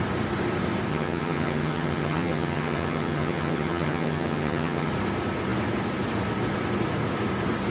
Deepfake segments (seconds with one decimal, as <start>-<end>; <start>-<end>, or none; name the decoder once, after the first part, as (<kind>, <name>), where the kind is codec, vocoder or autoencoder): 0.9-4.9 (vocoder, HiFi-GAN)